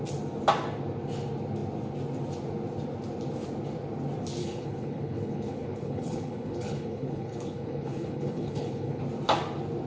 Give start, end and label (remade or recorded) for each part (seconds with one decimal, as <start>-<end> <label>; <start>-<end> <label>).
0.0-4.4 recorded; 4.4-9.0 remade; 9.0-9.9 recorded